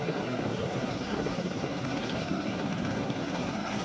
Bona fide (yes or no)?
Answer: no